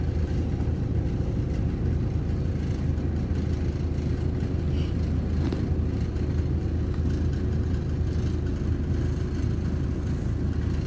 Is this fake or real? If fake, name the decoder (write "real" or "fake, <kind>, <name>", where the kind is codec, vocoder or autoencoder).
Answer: real